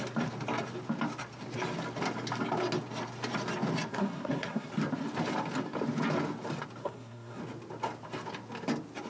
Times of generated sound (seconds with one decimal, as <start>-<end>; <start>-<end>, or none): 3.9-4.7; 6.8-7.4